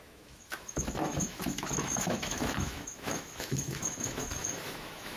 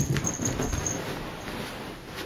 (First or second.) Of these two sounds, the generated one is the first